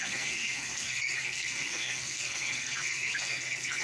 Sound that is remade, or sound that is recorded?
remade